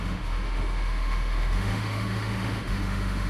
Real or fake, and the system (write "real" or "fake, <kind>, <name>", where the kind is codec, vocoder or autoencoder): fake, autoencoder, DAC-VAE